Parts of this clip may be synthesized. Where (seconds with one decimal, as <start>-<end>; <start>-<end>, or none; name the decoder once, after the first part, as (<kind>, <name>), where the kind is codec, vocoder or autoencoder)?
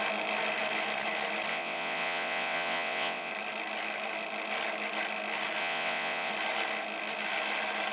1.5-3.3 (vocoder, WaveNeXt); 5.6-6.3